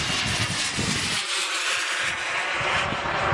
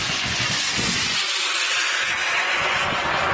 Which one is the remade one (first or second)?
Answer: second